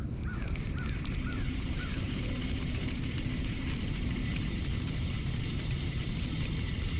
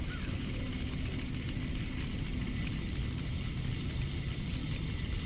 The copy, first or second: first